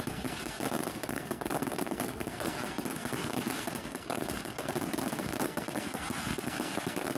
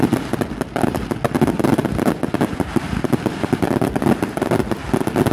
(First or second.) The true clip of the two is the second